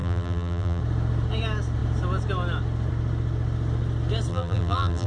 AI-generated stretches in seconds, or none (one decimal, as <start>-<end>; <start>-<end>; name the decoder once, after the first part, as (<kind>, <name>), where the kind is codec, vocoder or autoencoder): 0.0-0.8 (vocoder, BigVGAN v2); 4.3-5.1